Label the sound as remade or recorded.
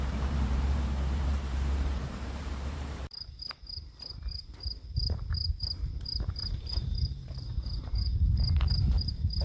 remade